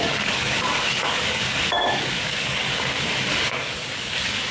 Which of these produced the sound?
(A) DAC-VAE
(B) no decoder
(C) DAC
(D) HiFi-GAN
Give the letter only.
C